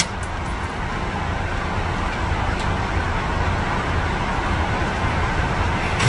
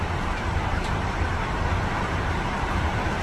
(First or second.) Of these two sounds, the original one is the first